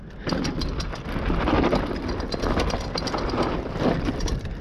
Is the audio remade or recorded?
recorded